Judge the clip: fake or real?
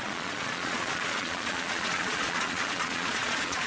fake